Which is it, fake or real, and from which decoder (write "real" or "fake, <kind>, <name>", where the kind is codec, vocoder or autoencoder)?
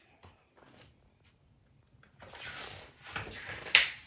real